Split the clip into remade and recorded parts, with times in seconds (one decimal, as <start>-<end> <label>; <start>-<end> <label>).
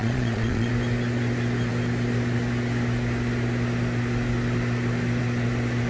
0.0-0.7 remade; 0.7-5.9 recorded